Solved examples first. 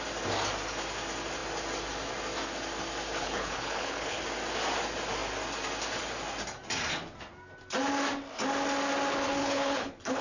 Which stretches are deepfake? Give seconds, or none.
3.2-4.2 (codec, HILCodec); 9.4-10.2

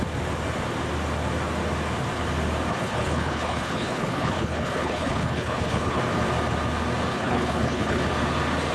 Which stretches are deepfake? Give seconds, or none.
2.7-6.0 (codec, HILCodec); 7.1-8.0

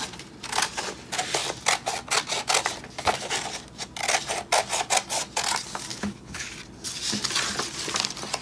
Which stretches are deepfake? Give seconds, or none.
5.9-6.5 (codec, HILCodec)

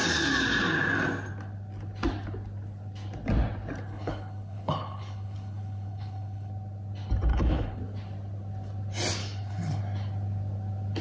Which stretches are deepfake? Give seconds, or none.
3.9-6.5 (codec, HILCodec); 7.3-7.8; 9.2-9.8

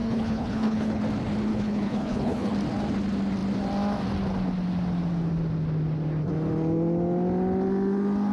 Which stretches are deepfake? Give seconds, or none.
0.0-1.0 (codec, HILCodec); 1.5-2.5

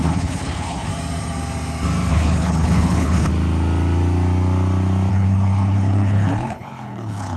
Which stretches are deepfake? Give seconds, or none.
0.0-0.9 (codec, HILCodec); 2.1-3.3; 5.1-7.4